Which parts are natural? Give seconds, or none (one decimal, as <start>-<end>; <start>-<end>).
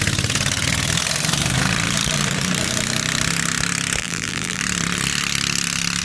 0.0-4.0; 4.6-6.0